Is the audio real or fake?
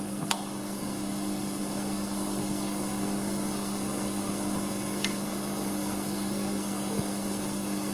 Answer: fake